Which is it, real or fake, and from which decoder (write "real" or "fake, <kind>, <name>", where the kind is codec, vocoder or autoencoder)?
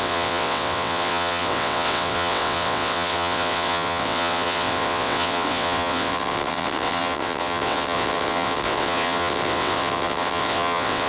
fake, vocoder, WaveNeXt